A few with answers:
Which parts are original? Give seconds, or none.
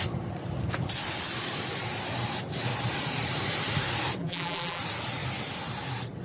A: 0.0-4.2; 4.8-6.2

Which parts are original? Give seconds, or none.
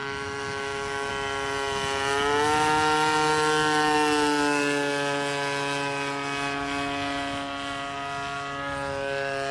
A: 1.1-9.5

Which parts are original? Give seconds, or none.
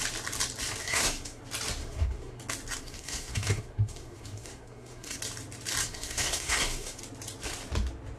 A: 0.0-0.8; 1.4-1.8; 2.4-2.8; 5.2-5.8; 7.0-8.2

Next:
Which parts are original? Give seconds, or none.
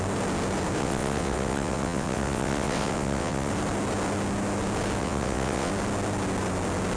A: 0.0-0.8; 3.5-5.0; 5.7-7.0